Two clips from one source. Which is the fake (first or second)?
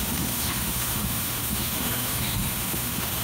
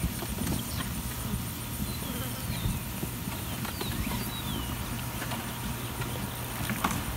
first